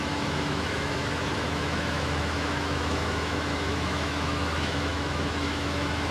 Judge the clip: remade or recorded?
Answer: remade